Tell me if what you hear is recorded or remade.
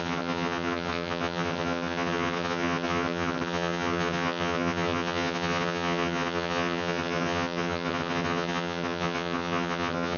remade